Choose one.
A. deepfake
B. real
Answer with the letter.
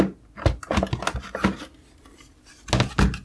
B